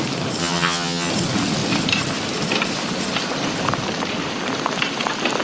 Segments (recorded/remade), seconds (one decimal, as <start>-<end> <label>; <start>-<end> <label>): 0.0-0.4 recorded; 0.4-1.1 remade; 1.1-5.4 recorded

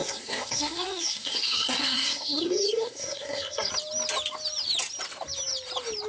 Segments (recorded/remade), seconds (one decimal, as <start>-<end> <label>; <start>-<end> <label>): 0.0-3.7 remade; 3.7-6.1 recorded

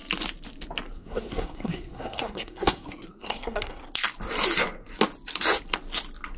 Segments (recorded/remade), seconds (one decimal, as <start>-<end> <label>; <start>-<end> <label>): 0.0-0.9 recorded; 0.9-3.8 remade; 3.8-6.4 recorded

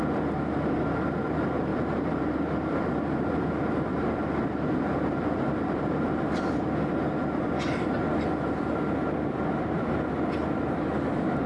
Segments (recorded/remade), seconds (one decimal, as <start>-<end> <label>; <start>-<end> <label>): 0.0-1.7 recorded; 1.7-2.9 remade; 2.9-3.9 recorded; 3.9-6.7 remade; 6.7-11.5 recorded